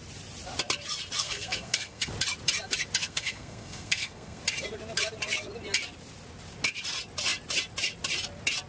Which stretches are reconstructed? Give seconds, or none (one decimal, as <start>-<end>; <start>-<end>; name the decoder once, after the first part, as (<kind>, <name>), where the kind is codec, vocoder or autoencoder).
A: 1.2-2.1 (codec, SNAC); 3.0-4.4